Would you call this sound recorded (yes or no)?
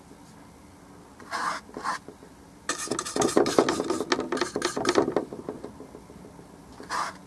yes